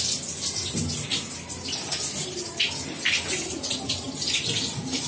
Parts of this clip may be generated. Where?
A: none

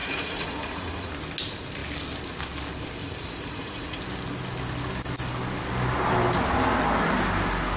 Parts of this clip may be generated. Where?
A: 0.0-1.1; 3.0-4.0

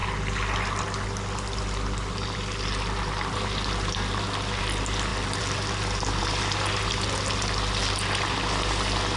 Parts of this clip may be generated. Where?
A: none

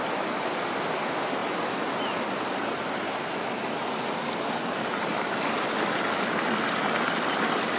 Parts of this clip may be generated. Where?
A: none

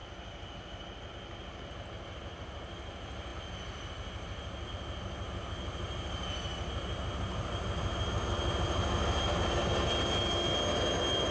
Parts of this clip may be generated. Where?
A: none

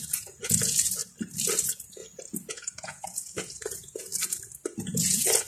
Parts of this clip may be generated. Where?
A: 0.0-1.0; 1.6-2.0; 2.5-4.1; 4.8-5.5

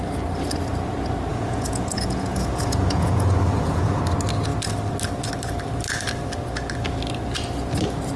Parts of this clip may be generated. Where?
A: 1.3-4.0